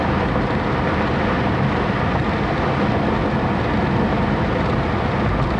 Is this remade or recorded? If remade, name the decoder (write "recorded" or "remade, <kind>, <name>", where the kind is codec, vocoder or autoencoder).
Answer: recorded